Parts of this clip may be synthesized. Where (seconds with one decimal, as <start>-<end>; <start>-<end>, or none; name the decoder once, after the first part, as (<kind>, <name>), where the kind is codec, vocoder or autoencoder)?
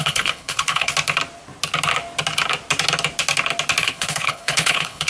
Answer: 0.0-0.9 (codec, HILCodec); 3.8-5.1